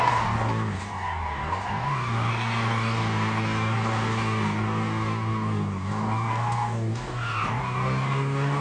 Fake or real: fake